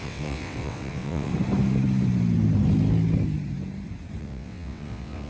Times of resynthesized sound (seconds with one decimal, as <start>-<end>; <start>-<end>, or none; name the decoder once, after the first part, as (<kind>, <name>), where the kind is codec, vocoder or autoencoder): 0.0-1.3 (vocoder, WaveNeXt); 4.2-5.3